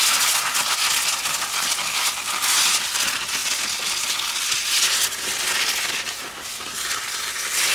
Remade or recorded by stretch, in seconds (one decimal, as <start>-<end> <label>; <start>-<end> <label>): 0.0-7.7 recorded